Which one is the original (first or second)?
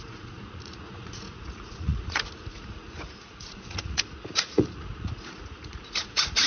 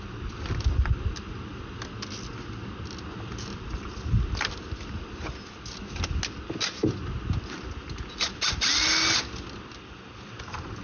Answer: second